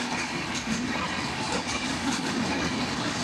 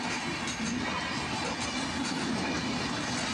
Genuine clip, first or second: second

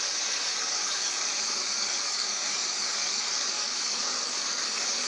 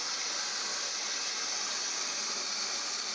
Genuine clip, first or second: second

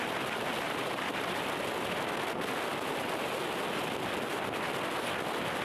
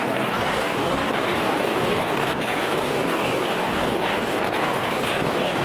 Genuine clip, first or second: first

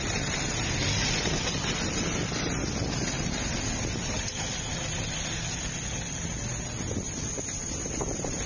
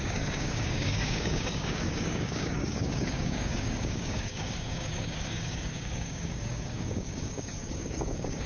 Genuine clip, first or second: first